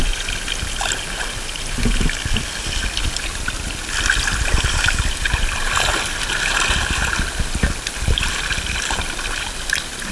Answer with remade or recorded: recorded